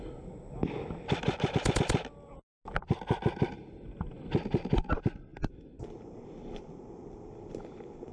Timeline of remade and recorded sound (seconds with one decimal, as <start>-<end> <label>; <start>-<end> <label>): 0.0-8.1 recorded